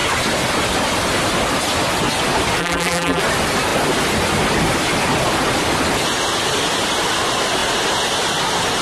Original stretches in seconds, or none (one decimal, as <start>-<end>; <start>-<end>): 0.0-2.6; 3.2-8.8